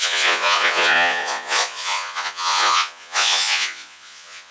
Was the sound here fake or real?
fake